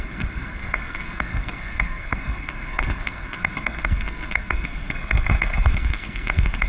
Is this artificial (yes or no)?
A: yes